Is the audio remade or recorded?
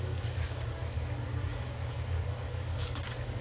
remade